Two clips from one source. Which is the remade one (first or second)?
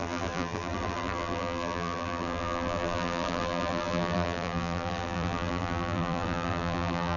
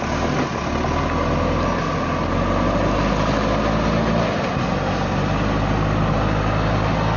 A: first